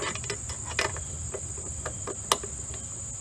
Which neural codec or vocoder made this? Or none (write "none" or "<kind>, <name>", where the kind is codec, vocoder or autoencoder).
none